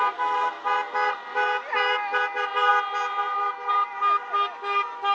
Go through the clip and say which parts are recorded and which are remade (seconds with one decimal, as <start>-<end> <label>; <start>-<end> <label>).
0.0-5.1 recorded